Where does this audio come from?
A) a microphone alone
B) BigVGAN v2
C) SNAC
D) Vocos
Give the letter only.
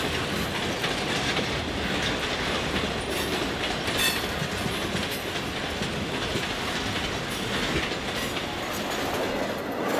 A